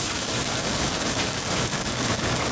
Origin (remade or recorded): remade